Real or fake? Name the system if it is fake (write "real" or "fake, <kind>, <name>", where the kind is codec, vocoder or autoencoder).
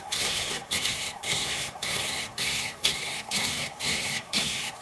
fake, codec, SNAC